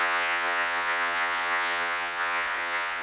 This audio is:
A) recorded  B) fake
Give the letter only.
B